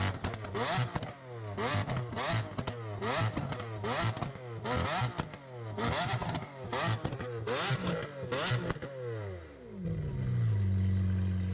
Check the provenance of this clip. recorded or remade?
recorded